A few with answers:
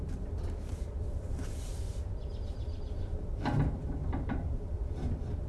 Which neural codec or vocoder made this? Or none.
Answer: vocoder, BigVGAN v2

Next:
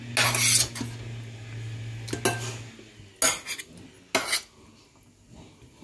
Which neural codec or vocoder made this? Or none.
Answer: none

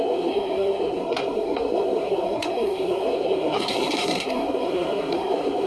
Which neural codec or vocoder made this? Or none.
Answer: codec, SNAC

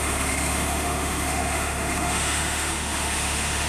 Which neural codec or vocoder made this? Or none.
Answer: autoencoder, DAC-VAE